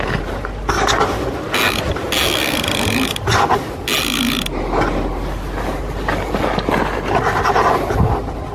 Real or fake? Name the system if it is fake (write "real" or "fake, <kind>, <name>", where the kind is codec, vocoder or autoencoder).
real